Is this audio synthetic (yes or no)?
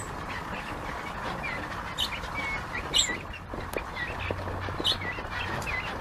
no